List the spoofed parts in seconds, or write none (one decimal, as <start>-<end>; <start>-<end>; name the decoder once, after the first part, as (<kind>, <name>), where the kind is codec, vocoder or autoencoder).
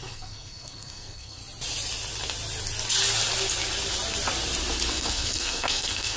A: 0.0-1.4 (codec, SNAC); 4.9-6.2